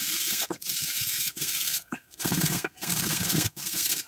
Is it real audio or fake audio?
fake